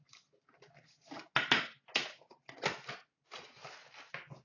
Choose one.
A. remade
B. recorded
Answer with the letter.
B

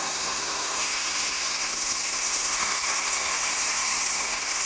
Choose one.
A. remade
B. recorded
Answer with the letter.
A